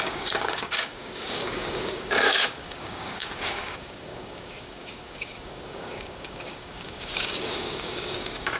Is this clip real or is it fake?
fake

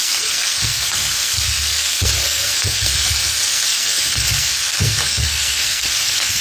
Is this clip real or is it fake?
fake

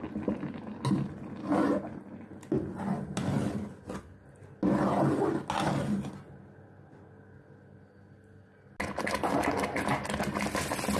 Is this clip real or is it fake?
real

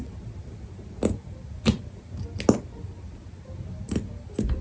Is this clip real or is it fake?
real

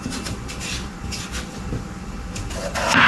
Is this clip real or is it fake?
real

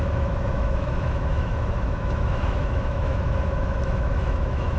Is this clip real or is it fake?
fake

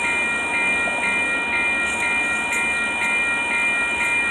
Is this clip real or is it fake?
real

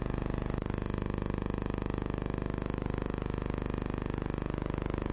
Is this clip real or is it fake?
fake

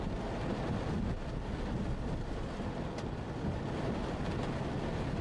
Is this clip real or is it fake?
real